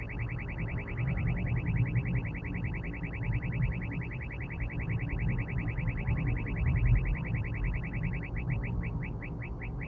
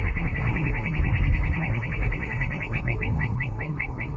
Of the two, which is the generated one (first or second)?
second